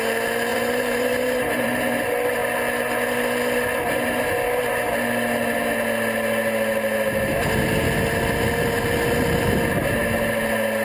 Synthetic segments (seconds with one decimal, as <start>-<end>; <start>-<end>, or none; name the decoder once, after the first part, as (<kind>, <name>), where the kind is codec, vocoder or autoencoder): 0.5-1.8 (vocoder, BigVGAN v2)